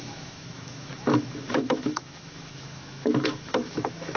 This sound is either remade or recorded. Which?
remade